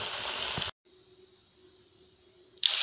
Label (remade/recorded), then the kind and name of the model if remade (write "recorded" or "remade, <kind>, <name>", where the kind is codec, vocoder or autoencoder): recorded